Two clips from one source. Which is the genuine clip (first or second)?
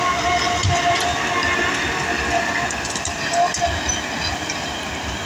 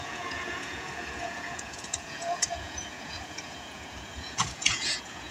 first